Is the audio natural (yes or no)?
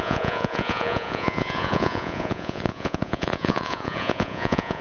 no